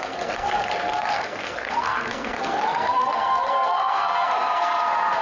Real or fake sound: fake